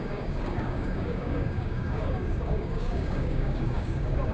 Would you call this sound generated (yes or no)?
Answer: yes